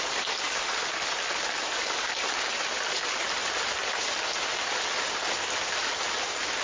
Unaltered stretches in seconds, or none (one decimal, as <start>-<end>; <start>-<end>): 0.0-6.6

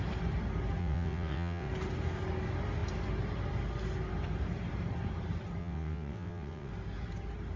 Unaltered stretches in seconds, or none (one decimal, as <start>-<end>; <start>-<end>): 0.0-0.8; 1.7-5.6; 6.7-7.6

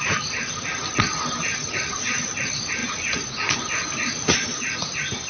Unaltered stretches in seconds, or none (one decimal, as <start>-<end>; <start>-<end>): 0.0-5.3

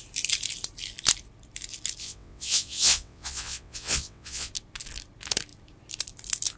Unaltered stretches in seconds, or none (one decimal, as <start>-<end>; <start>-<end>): 0.0-2.0; 4.5-6.6